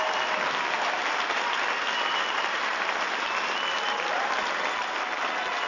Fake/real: real